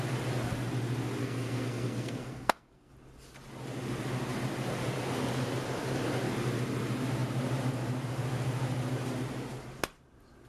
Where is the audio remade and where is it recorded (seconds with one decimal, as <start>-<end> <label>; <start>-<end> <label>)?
0.0-1.2 recorded; 1.2-2.9 remade; 2.9-10.5 recorded